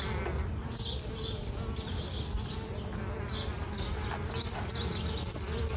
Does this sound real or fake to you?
real